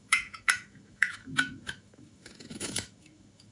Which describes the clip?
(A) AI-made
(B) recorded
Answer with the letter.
A